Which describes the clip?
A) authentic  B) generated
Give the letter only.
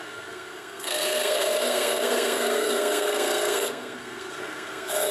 B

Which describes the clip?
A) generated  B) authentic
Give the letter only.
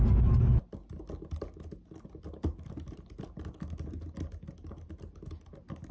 B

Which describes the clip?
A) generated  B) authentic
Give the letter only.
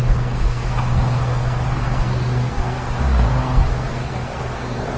A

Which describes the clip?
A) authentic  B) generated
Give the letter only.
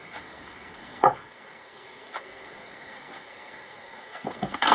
B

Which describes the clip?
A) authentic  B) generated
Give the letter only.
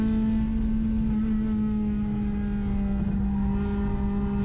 A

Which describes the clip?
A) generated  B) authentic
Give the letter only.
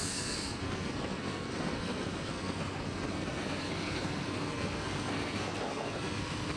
A